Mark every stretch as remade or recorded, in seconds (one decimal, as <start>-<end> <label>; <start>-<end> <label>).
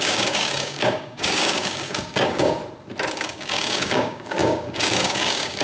0.0-2.6 remade; 2.6-3.1 recorded; 3.1-5.6 remade